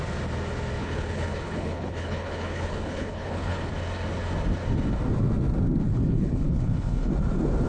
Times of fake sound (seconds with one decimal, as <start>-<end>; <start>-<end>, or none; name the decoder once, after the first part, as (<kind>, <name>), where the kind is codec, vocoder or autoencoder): 0.8-3.7 (codec, HILCodec); 5.8-7.1